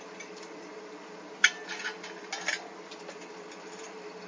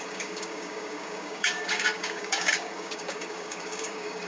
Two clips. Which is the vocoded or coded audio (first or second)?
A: second